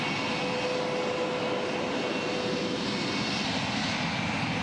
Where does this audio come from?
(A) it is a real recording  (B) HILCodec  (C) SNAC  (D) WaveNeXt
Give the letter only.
A